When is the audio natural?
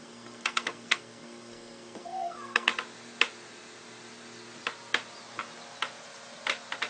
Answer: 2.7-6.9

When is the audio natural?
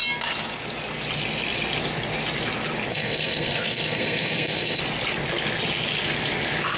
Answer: 0.0-2.9; 4.8-6.8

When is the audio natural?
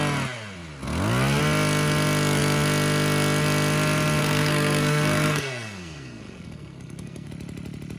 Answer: 0.0-4.2; 7.3-8.0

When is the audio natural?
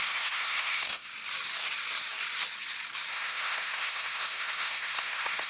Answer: 1.1-3.1